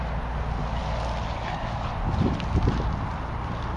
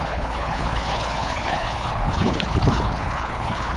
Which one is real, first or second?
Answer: first